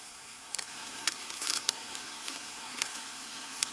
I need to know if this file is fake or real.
fake